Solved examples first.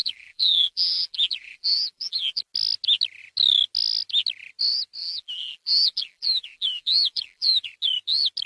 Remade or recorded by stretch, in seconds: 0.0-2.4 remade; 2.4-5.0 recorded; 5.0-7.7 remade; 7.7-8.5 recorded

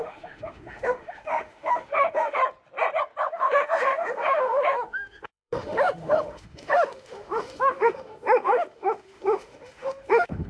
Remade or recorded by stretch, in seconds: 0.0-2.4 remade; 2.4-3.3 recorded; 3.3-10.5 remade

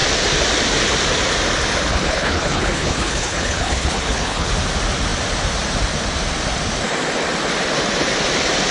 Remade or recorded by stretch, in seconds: 0.0-1.9 recorded; 1.9-4.5 remade; 4.5-8.7 recorded